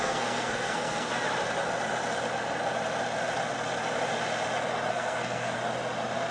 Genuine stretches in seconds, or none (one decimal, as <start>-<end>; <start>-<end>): 1.1-4.9; 5.6-6.3